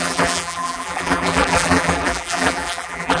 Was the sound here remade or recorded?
remade